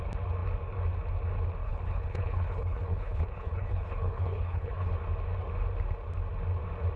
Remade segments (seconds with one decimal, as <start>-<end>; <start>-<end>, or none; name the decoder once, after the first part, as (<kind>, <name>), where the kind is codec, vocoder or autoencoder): 1.6-4.9 (codec, HILCodec)